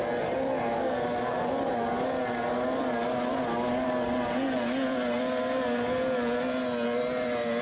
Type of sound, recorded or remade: recorded